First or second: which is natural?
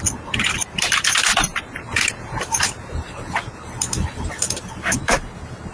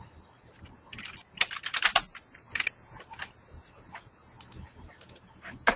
second